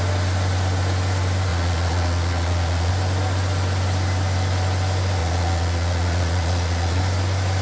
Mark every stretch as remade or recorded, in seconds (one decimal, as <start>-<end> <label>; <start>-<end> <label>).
0.0-1.5 recorded; 1.5-2.9 remade; 2.9-5.2 recorded; 5.2-7.0 remade; 7.0-7.6 recorded